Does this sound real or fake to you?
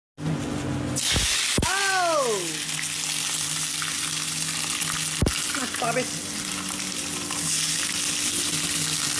real